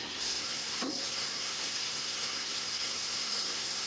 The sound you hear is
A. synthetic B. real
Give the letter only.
A